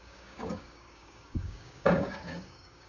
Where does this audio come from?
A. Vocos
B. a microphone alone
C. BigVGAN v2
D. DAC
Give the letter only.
D